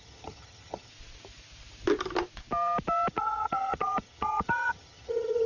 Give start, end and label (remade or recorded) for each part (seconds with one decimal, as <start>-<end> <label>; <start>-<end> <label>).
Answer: 0.0-0.9 remade; 0.9-3.1 recorded; 3.1-5.5 remade